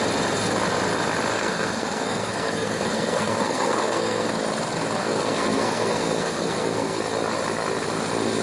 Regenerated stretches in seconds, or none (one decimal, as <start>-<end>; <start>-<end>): 1.3-4.3; 5.0-7.0